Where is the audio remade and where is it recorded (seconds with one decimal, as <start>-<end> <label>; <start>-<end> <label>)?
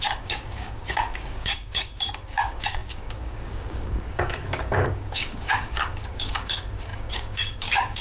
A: 0.0-8.0 remade